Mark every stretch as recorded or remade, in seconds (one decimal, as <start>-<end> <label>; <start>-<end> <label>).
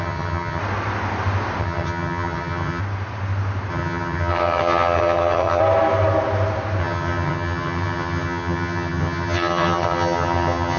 0.0-0.6 remade; 0.6-1.6 recorded; 1.6-2.8 remade; 2.8-3.7 recorded; 3.7-5.6 remade; 5.6-6.8 recorded; 6.8-10.8 remade